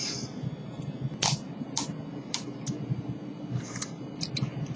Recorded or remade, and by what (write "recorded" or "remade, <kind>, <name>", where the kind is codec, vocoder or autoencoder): recorded